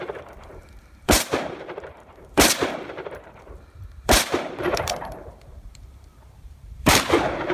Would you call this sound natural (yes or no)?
no